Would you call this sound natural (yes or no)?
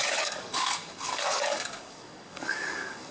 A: no